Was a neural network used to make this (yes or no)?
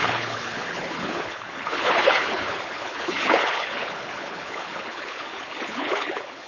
yes